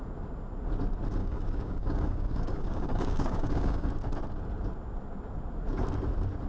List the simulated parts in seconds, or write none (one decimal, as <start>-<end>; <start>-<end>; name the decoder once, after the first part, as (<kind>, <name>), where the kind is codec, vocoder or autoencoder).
1.2-3.9 (codec, DAC)